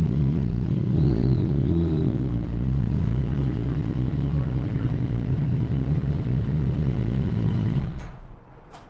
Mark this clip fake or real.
fake